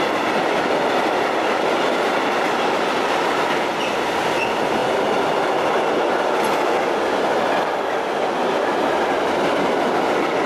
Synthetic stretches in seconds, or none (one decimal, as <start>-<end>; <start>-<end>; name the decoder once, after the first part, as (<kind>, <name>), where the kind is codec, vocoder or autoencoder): none